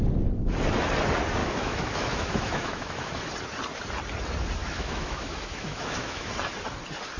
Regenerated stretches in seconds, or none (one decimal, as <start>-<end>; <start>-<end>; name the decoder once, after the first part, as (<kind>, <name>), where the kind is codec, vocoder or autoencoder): 1.4-3.2 (autoencoder, DAC-VAE); 4.6-6.3